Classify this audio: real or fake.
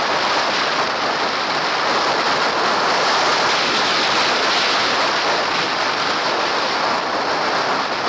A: real